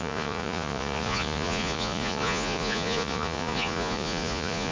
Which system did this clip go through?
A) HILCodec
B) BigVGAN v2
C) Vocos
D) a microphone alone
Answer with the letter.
C